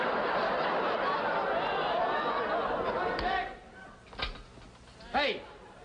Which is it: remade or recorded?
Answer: recorded